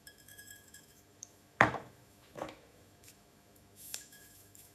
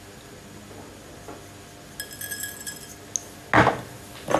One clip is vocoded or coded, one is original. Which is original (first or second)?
second